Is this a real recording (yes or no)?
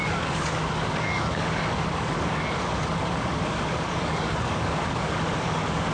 no